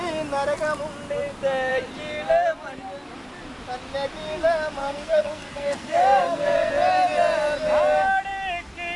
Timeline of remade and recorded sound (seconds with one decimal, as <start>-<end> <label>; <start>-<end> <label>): 0.0-4.8 recorded; 4.8-6.7 remade; 6.7-9.0 recorded